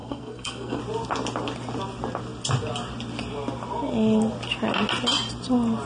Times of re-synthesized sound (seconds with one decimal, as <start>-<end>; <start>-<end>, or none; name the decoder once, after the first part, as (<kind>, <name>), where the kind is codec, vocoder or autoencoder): 0.0-0.8 (codec, SNAC)